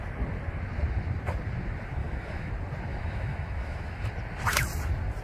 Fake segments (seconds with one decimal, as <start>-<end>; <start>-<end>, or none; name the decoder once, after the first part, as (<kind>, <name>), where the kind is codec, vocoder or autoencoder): 2.0-2.5 (autoencoder, DAC-VAE); 2.9-4.1